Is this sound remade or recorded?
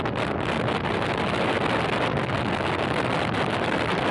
recorded